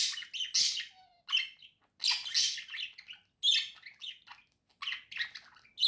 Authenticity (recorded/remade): recorded